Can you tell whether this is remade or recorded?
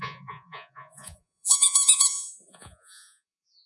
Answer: remade